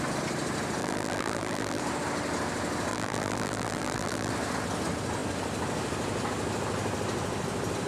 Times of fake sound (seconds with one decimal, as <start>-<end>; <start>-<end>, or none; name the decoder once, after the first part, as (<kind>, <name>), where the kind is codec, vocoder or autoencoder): 0.8-1.8 (vocoder, BigVGAN v2); 2.9-4.3